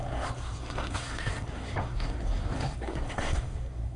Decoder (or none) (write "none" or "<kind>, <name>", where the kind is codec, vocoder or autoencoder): codec, SNAC